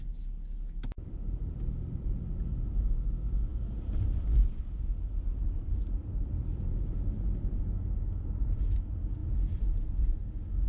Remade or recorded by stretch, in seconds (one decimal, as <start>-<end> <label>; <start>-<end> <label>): 0.0-3.5 recorded; 3.5-4.6 remade; 4.6-5.6 recorded; 5.6-6.3 remade; 6.3-10.7 recorded